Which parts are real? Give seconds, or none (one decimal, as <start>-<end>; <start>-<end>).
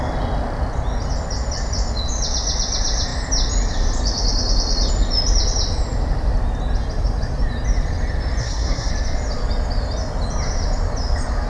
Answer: 0.0-8.4; 8.9-11.5